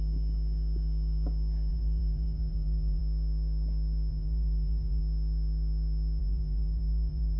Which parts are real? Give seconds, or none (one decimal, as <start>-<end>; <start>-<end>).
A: 0.0-1.7; 3.0-4.1; 5.0-6.2

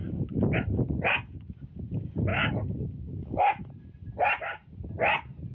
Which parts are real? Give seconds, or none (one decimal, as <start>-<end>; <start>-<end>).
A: 1.0-5.5

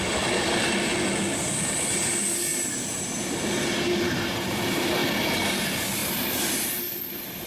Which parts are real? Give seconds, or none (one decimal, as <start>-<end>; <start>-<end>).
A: 0.9-2.0; 2.5-4.5; 5.0-5.6

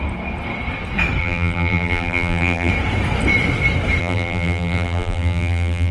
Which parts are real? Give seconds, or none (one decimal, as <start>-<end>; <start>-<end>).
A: 0.0-1.2; 2.7-4.0